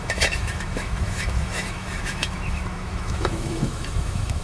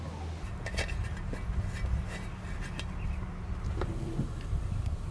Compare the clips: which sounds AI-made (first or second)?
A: first